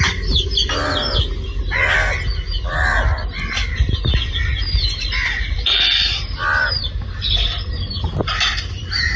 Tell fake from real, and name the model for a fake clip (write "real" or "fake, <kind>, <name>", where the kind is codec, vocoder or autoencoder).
real